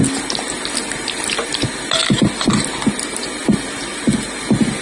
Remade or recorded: recorded